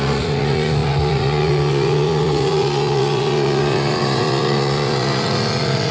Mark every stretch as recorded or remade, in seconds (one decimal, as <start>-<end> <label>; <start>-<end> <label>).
0.0-5.9 remade